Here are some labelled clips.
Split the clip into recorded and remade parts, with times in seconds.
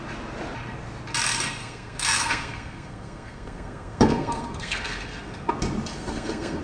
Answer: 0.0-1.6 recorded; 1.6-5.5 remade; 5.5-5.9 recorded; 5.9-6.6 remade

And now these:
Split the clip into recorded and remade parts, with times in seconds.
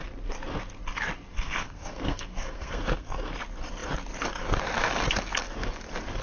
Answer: 0.0-1.3 recorded; 1.3-3.3 remade; 3.3-6.2 recorded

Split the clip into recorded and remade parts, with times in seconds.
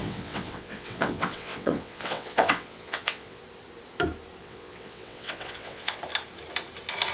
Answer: 0.0-3.4 remade; 3.4-4.4 recorded; 4.4-6.0 remade; 6.0-7.1 recorded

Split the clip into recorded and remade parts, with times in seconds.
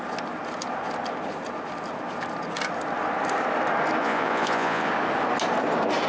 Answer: 0.0-4.0 recorded; 4.0-4.9 remade; 4.9-6.1 recorded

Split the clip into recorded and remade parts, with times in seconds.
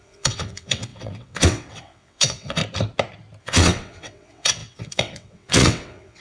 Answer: 0.0-2.6 remade; 2.6-3.4 recorded; 3.4-6.2 remade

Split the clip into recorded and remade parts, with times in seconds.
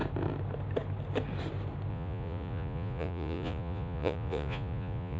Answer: 0.0-1.9 recorded; 1.9-5.2 remade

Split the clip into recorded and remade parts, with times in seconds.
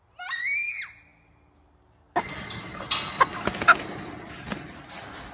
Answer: 0.0-5.3 recorded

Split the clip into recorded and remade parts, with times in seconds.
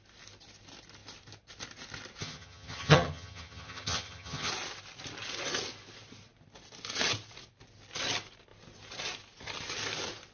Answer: 0.0-2.2 recorded; 2.2-4.5 remade; 4.5-10.3 recorded